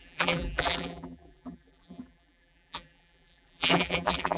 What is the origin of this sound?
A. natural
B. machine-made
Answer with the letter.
B